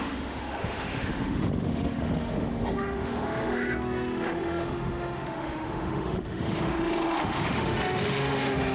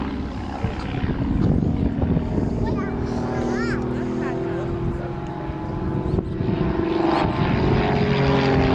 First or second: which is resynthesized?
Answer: first